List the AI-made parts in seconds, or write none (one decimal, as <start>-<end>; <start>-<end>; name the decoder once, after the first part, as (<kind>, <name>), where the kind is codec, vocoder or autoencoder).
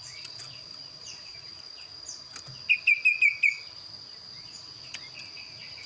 0.0-1.9 (vocoder, Vocos); 4.4-5.9